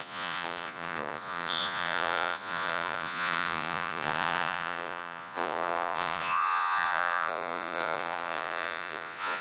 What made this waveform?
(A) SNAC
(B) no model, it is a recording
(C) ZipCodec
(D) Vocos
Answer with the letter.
D